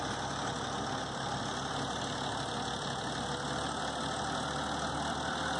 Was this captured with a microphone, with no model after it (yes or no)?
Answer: yes